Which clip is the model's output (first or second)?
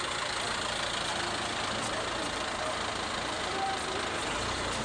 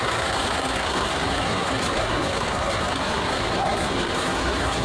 second